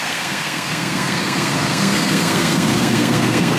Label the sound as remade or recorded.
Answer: remade